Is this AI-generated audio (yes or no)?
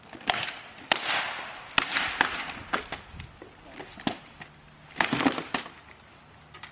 no